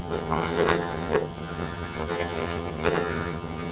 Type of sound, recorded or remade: remade